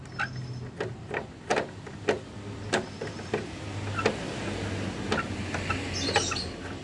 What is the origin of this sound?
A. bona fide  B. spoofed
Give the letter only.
A